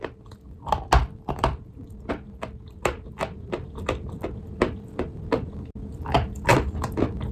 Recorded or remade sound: recorded